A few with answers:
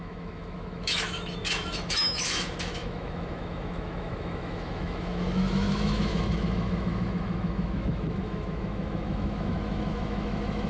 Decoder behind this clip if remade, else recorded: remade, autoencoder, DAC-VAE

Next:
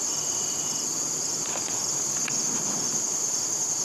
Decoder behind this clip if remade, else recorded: recorded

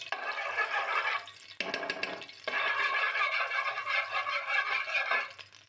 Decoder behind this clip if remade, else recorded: recorded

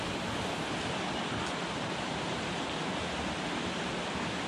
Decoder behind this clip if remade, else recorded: recorded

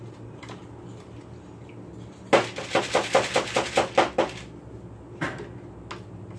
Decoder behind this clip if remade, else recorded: recorded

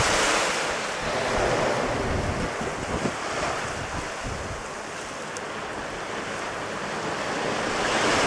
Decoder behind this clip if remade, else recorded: recorded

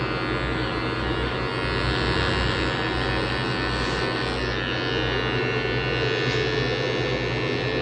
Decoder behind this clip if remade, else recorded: recorded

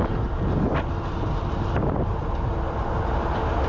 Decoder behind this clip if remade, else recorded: recorded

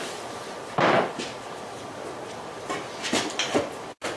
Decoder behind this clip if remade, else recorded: recorded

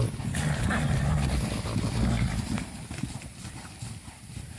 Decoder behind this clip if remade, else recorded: recorded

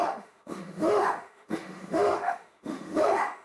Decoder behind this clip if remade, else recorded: remade, autoencoder, DAC-VAE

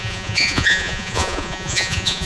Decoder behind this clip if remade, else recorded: remade, vocoder, Vocos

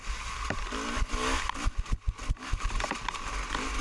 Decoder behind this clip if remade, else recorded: recorded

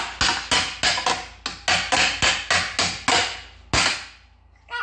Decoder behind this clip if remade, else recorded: recorded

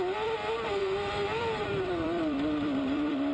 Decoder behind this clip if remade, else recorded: remade, vocoder, BigVGAN v2